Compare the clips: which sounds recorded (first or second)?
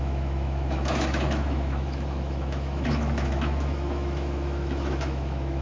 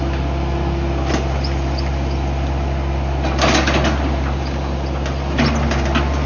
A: second